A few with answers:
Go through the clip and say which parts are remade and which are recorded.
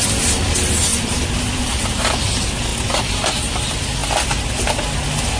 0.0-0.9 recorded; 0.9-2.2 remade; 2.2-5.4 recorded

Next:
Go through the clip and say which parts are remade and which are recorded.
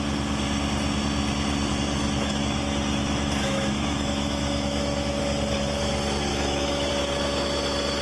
0.0-1.7 recorded; 1.7-5.2 remade; 5.2-6.3 recorded; 6.3-6.9 remade; 6.9-8.0 recorded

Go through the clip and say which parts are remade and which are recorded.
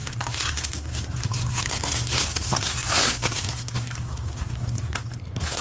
0.0-5.6 remade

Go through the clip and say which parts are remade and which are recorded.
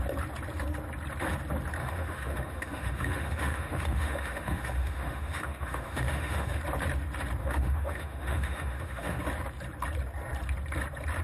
0.0-1.8 recorded; 1.8-6.6 remade; 6.6-7.4 recorded; 7.4-9.2 remade; 9.2-11.2 recorded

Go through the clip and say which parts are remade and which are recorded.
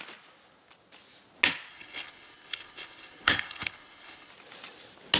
0.0-1.7 recorded; 1.7-4.3 remade; 4.3-5.2 recorded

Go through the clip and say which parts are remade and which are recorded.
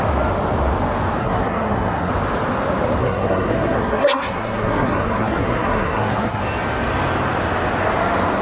0.0-1.2 recorded; 1.2-2.1 remade; 2.1-3.0 recorded; 3.0-6.4 remade; 6.4-8.4 recorded